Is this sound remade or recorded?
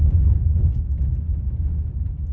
recorded